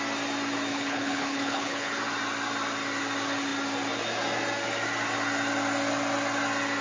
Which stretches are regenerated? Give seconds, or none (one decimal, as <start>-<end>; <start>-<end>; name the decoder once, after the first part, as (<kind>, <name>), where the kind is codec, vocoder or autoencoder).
0.7-2.0 (codec, HILCodec)